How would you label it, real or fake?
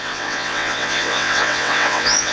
fake